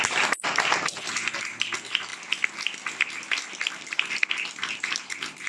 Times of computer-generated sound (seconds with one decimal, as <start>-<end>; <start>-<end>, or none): none